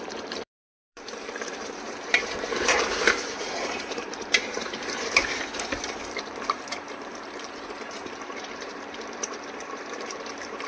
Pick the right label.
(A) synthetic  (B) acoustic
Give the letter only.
A